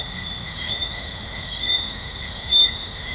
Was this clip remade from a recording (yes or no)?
yes